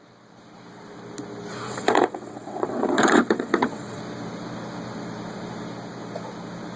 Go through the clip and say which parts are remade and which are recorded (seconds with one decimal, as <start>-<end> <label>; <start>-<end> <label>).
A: 0.0-1.5 recorded; 1.5-4.0 remade; 4.0-6.8 recorded